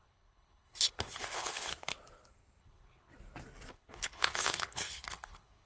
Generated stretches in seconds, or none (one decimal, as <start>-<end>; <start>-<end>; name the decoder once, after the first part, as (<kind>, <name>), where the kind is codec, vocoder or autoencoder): 0.0-1.7 (codec, HILCodec); 2.6-3.1; 3.7-5.7